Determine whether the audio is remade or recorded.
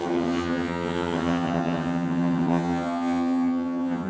remade